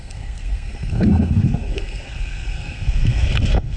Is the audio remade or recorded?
remade